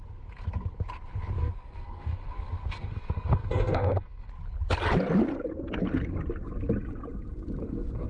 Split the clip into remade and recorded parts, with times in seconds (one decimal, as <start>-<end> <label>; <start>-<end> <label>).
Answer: 0.0-1.4 recorded; 1.4-4.3 remade; 4.3-7.6 recorded; 7.6-8.1 remade